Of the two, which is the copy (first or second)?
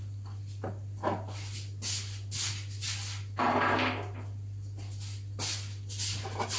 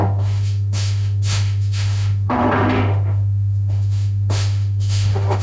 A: second